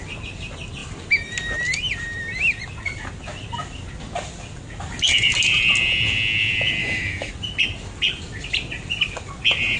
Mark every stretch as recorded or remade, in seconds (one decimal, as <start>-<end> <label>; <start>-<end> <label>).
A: 0.0-6.8 recorded; 6.8-7.3 remade; 7.3-9.8 recorded